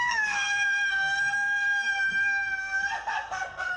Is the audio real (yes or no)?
no